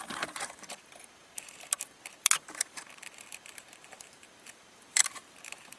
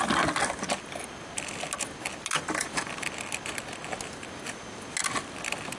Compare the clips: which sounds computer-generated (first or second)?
first